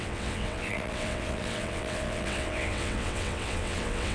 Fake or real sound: fake